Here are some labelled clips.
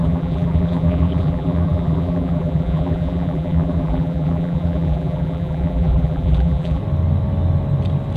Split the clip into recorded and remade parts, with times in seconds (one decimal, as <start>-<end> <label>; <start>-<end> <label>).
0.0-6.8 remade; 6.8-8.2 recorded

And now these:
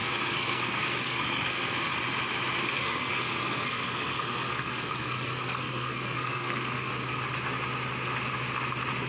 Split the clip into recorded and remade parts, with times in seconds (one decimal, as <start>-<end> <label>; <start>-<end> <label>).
0.0-1.9 remade; 1.9-2.7 recorded; 2.7-6.9 remade; 6.9-9.1 recorded

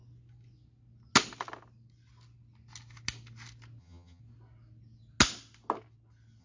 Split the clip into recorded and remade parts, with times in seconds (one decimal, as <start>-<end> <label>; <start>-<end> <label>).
0.0-3.8 recorded; 3.8-4.2 remade; 4.2-6.4 recorded

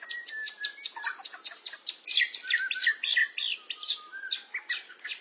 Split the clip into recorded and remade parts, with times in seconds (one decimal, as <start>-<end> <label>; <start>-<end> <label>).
0.0-5.2 recorded

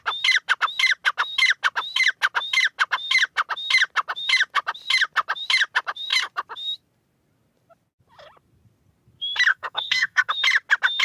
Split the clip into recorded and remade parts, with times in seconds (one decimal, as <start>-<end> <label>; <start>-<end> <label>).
0.0-9.5 recorded; 9.5-10.3 remade; 10.3-11.0 recorded

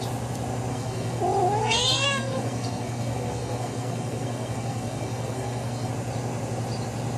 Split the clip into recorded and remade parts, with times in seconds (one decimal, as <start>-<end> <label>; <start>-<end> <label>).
0.0-0.7 recorded; 0.7-1.2 remade; 1.2-1.6 recorded; 1.6-5.9 remade; 5.9-7.2 recorded

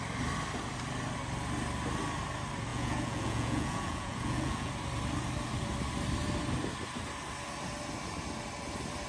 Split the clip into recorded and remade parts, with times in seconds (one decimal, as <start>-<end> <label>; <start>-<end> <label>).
0.0-2.7 recorded; 2.7-4.7 remade; 4.7-9.1 recorded

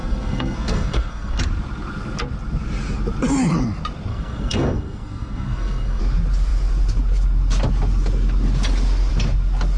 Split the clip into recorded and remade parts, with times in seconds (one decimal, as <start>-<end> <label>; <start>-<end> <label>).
0.0-1.4 remade; 1.4-4.1 recorded; 4.1-6.0 remade; 6.0-9.8 recorded